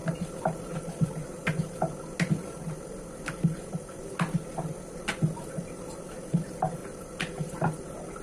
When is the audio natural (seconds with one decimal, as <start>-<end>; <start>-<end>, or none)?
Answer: 0.0-8.2